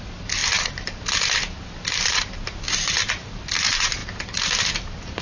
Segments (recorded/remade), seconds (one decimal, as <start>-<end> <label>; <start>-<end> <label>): 0.0-5.2 remade